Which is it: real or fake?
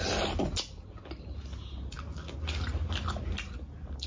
real